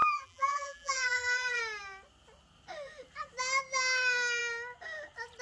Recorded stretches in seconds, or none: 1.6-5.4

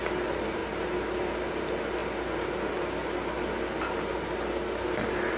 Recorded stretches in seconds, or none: 0.6-1.5

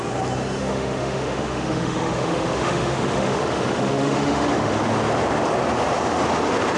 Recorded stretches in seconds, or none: 0.0-0.6; 4.7-6.8

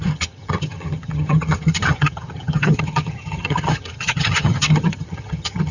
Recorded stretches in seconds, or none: none

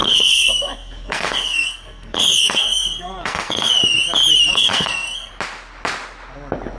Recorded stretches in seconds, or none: 3.7-4.5; 5.3-6.8

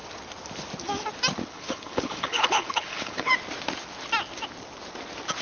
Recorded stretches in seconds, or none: 0.0-1.5; 3.3-5.4

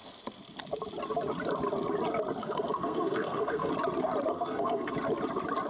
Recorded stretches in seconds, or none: 0.0-2.4; 3.7-4.3; 4.9-5.7

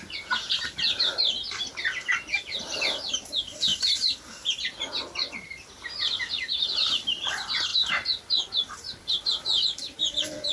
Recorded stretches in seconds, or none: 3.7-4.6